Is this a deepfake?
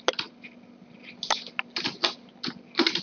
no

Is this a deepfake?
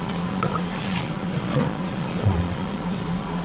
yes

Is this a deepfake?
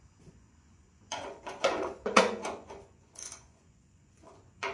yes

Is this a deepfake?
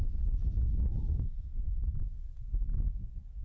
no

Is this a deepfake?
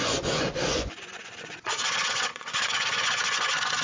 yes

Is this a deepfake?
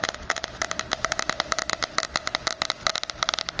no